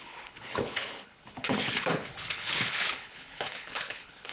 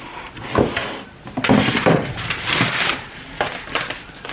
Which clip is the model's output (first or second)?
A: first